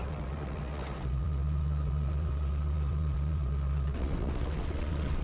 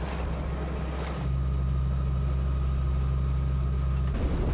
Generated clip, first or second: first